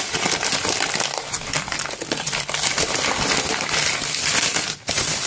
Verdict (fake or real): real